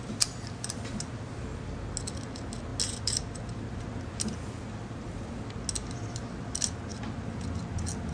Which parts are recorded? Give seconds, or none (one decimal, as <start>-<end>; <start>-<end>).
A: 0.0-8.1